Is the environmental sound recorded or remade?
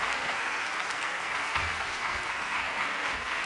remade